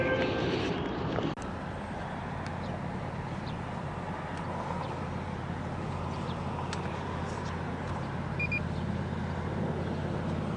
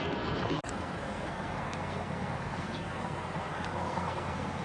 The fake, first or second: second